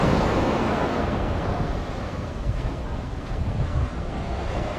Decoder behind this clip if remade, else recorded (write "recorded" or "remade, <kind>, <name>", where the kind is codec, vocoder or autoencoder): remade, codec, SNAC